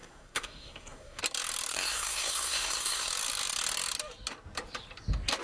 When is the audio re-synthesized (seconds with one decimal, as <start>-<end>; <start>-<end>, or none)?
0.0-1.2; 1.7-3.1